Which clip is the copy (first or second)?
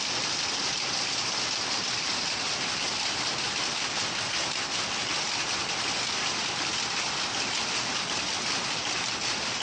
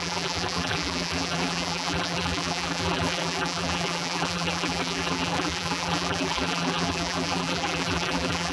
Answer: second